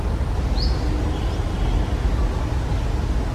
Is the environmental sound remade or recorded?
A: recorded